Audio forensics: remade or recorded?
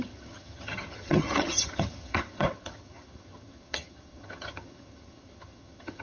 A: remade